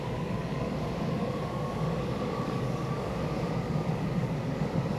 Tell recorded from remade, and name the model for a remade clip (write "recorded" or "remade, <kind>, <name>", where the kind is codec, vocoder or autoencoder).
remade, codec, DAC